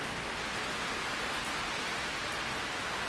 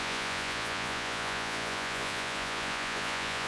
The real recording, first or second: first